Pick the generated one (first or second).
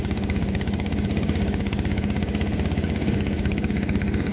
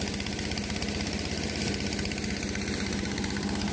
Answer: first